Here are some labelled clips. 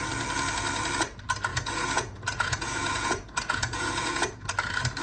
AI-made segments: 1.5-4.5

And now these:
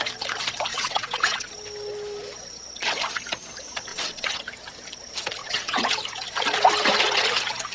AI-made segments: 0.7-1.5; 3.9-4.4; 5.4-5.9